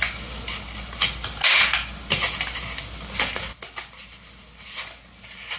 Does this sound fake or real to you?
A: real